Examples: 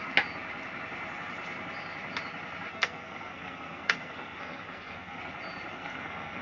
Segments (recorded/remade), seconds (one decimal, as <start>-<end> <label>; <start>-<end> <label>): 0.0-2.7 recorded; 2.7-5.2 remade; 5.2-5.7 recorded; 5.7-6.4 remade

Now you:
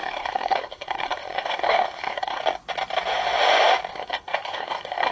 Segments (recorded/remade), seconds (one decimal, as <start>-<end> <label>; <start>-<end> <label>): 0.0-2.4 remade; 2.4-3.9 recorded; 3.9-5.1 remade

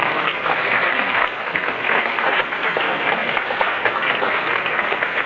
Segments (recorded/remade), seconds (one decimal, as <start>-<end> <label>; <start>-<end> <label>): 0.0-5.3 remade

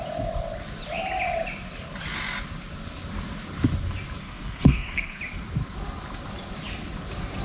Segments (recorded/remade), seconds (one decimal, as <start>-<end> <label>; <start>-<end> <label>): 0.0-4.2 recorded; 4.2-5.2 remade; 5.2-7.4 recorded

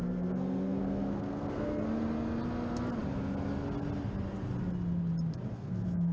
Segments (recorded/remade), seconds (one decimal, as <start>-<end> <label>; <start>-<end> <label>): 0.0-1.8 remade; 1.8-5.5 recorded; 5.5-6.1 remade